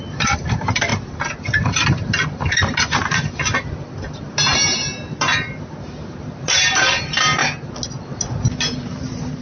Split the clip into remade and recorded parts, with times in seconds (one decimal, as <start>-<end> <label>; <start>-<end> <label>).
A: 0.0-7.4 remade; 7.4-8.8 recorded; 8.8-9.4 remade